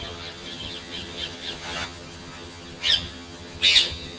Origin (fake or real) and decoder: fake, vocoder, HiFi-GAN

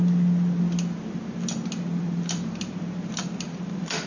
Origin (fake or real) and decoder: real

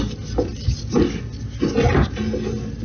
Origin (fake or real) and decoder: real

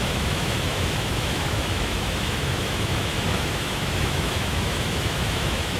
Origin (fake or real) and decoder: fake, autoencoder, DAC-VAE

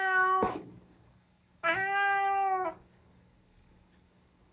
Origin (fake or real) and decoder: fake, codec, DAC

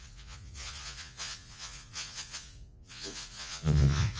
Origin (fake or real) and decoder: fake, vocoder, Vocos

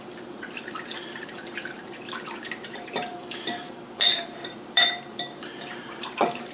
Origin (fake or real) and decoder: fake, vocoder, BigVGAN v2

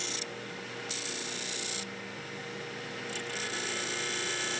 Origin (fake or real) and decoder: real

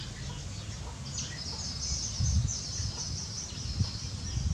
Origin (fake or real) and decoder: real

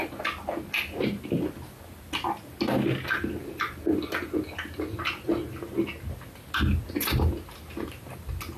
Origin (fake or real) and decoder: real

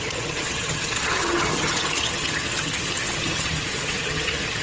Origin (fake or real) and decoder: fake, vocoder, HiFi-GAN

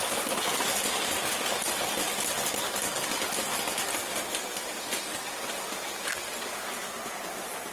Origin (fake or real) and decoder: real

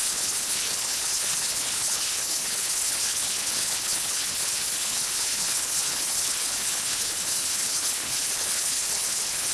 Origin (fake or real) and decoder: fake, codec, HILCodec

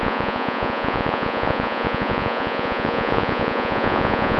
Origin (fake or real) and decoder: fake, vocoder, Vocos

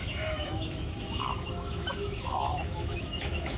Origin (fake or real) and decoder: fake, autoencoder, DAC-VAE